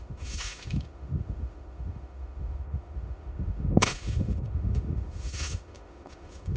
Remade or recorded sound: remade